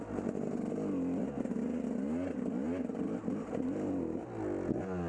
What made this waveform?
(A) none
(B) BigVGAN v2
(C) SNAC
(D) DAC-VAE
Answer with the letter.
A